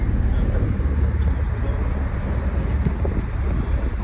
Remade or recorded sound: recorded